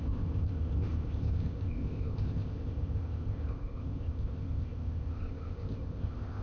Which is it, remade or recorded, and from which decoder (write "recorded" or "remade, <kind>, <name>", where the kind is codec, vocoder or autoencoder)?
remade, codec, ZipCodec